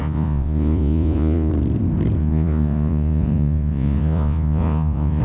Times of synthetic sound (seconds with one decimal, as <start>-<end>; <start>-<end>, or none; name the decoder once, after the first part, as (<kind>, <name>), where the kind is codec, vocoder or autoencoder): 0.0-1.5 (vocoder, Vocos); 2.2-5.2